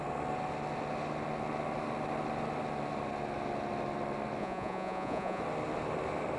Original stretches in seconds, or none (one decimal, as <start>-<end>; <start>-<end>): 0.0-4.4; 5.4-6.4